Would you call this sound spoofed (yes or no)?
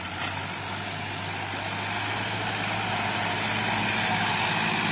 no